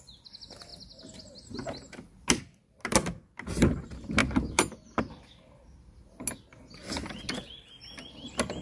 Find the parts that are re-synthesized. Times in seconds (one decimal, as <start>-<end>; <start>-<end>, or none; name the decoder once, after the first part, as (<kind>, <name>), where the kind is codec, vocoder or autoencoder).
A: none